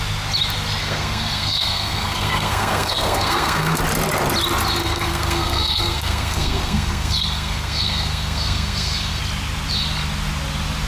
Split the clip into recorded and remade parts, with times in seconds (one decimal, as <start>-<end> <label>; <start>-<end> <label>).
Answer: 0.0-0.8 recorded; 0.8-3.8 remade; 3.8-4.8 recorded; 4.8-9.2 remade; 9.2-10.9 recorded